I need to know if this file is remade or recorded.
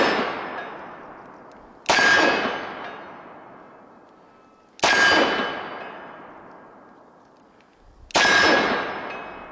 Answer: recorded